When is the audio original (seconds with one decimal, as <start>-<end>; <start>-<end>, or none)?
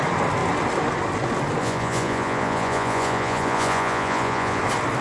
0.0-1.6; 4.6-5.0